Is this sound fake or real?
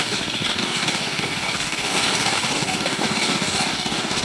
fake